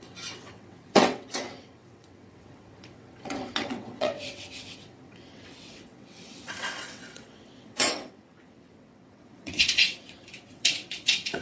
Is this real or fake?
fake